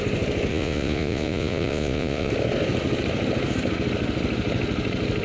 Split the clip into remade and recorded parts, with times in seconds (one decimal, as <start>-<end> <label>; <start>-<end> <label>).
0.0-0.5 recorded; 0.5-2.3 remade; 2.3-5.2 recorded